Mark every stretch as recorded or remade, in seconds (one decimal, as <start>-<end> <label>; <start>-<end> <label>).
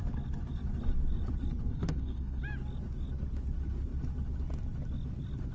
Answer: 0.0-1.7 recorded; 1.7-2.4 remade; 2.4-5.5 recorded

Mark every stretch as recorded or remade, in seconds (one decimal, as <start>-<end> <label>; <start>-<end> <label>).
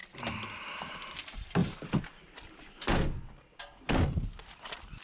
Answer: 0.0-5.0 recorded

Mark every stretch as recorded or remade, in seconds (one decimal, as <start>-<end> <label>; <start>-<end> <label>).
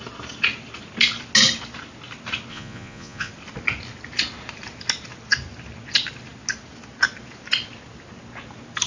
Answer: 0.0-2.5 recorded; 2.5-3.3 remade; 3.3-8.9 recorded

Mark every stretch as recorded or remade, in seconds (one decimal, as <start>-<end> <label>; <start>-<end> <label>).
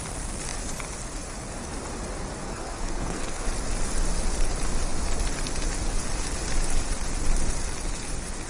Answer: 0.0-2.4 recorded; 2.4-3.5 remade; 3.5-8.5 recorded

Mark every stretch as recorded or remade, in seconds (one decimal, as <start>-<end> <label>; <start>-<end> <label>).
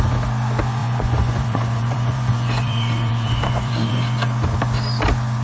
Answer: 0.0-0.8 recorded; 0.8-4.0 remade; 4.0-5.4 recorded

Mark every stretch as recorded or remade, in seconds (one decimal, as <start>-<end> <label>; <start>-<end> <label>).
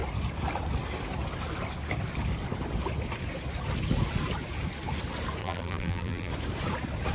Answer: 0.0-5.4 recorded; 5.4-6.3 remade; 6.3-7.1 recorded